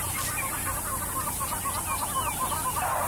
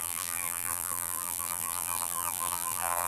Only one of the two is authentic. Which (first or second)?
first